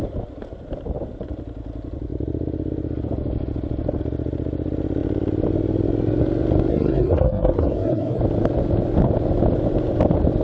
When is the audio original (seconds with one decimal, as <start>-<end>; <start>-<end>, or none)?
0.0-6.7; 8.2-10.4